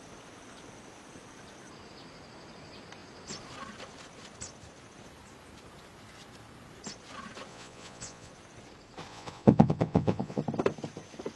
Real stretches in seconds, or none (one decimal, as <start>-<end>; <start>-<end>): 0.0-7.5; 8.3-9.1; 10.4-11.4